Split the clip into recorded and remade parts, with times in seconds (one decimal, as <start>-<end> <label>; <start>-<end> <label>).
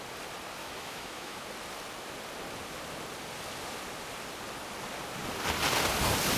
0.0-0.6 recorded; 0.6-1.4 remade; 1.4-6.4 recorded